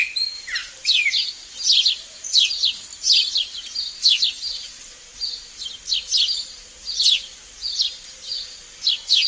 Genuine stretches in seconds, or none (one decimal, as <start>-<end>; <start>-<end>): 0.0-0.6; 1.3-9.3